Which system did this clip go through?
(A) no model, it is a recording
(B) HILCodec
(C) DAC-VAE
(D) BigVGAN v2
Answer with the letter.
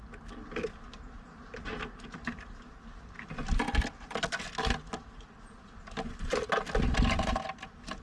A